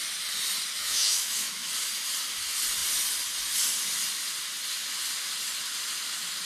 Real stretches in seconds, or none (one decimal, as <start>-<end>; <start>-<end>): 0.0-0.8; 1.7-6.5